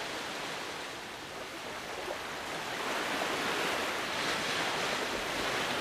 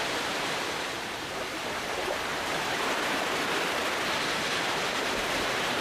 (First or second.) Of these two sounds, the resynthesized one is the second